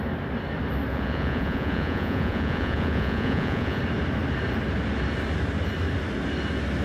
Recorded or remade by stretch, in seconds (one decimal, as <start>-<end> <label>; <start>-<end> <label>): 0.0-0.9 recorded; 0.9-3.8 remade; 3.8-6.8 recorded